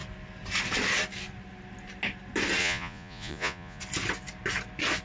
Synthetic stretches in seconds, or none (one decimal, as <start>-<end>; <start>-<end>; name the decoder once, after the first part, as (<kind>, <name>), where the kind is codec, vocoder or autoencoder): 2.6-3.8 (vocoder, Vocos)